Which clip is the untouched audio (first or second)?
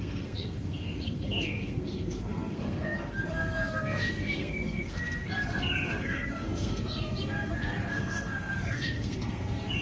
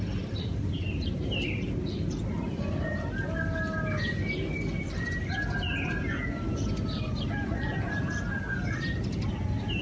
second